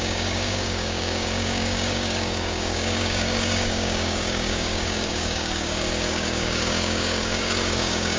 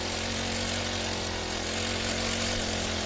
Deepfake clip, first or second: first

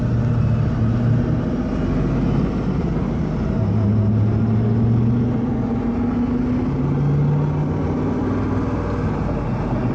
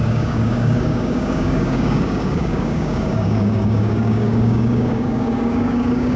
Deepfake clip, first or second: second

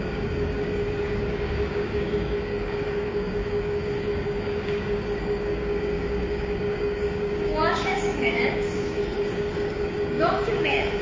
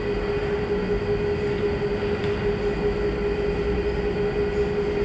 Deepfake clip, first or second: first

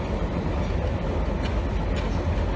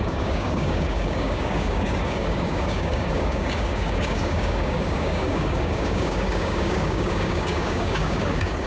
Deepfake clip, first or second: second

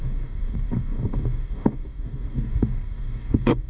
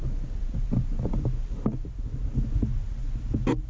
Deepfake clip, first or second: first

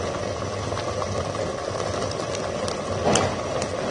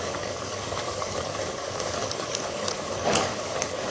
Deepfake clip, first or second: second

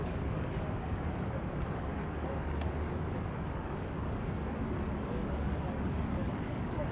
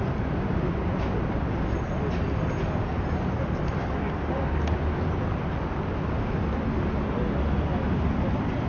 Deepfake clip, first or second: first